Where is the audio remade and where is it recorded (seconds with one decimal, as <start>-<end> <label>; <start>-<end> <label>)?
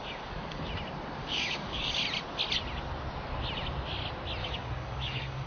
0.0-0.7 remade; 0.7-1.2 recorded; 1.2-2.0 remade; 2.0-4.4 recorded; 4.4-5.5 remade